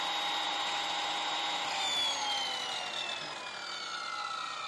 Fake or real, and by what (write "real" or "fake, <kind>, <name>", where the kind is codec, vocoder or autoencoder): real